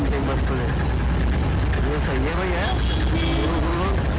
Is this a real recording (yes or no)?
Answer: yes